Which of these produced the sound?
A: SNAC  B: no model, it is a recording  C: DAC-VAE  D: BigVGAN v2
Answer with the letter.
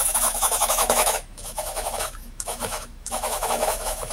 C